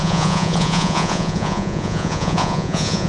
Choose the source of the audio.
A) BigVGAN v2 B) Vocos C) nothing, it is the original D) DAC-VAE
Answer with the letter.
B